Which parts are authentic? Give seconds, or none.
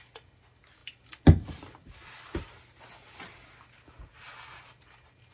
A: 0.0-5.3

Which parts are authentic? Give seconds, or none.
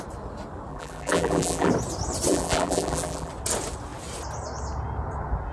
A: 0.0-0.7; 1.7-2.3; 3.3-5.5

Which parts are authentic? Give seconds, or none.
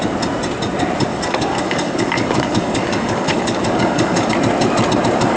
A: 0.0-1.1; 4.3-5.4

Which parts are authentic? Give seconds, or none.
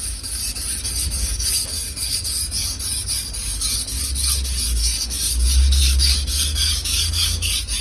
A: 0.4-0.9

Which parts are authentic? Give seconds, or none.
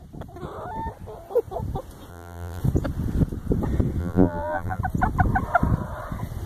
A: 0.0-2.1; 2.6-4.0; 4.8-6.5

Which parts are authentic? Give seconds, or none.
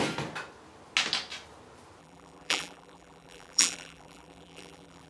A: 0.0-2.0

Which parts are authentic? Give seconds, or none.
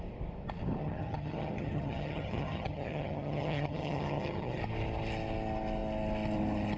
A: 0.0-0.8; 4.6-6.8